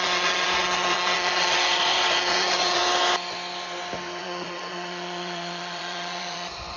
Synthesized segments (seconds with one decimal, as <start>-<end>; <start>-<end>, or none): 0.0-2.8; 4.2-6.8

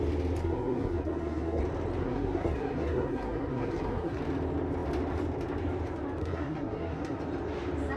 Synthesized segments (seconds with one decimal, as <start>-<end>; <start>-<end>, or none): 0.4-1.6; 2.0-4.2; 6.2-7.2

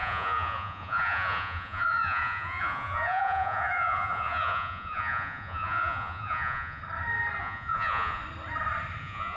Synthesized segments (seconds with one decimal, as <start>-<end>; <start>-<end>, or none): 0.0-6.8; 7.4-8.2; 9.0-9.4

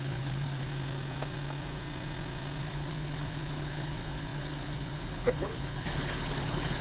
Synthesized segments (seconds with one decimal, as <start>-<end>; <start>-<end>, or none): 0.0-0.7; 2.6-6.8